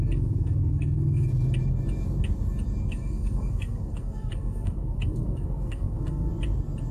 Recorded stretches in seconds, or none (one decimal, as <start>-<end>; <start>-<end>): 1.3-2.9; 6.3-6.9